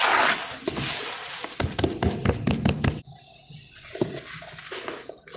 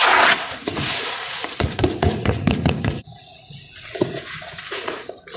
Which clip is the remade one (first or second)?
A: second